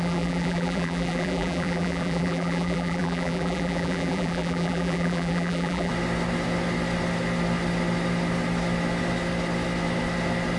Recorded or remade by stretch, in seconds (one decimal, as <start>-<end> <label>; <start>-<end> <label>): 0.0-5.9 remade; 5.9-10.6 recorded